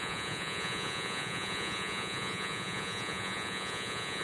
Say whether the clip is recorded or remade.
remade